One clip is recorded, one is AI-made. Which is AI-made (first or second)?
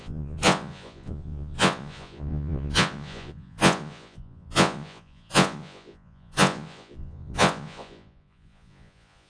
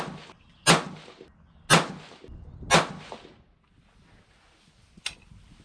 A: first